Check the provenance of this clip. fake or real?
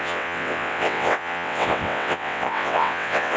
fake